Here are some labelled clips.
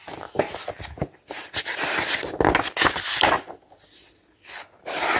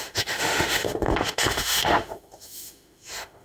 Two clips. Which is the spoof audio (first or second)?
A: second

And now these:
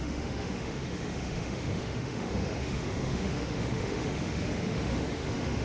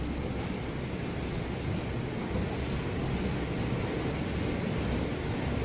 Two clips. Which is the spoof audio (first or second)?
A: first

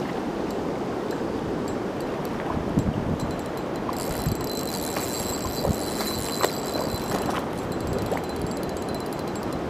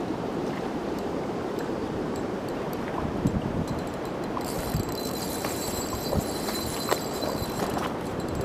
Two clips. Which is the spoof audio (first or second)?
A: second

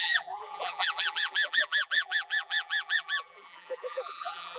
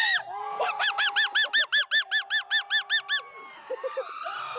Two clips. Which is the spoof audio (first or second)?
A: first